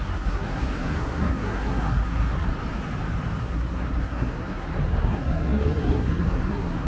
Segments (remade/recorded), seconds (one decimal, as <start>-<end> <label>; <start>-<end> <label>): 0.0-2.5 remade; 2.5-3.4 recorded; 3.4-6.9 remade